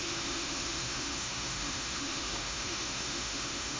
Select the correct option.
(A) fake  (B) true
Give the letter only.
A